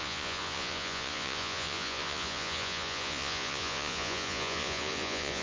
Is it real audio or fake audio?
fake